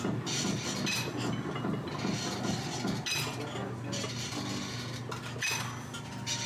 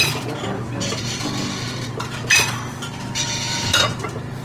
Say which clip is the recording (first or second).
first